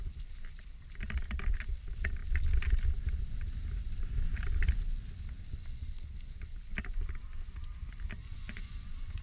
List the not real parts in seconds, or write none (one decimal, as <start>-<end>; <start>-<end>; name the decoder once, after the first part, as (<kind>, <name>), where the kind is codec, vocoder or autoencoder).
8.2-9.2 (vocoder, Vocos)